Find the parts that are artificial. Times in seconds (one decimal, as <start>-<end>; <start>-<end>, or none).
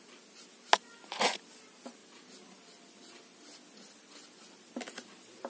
none